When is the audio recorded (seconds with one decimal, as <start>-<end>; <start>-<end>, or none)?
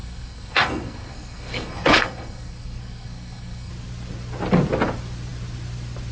3.7-6.1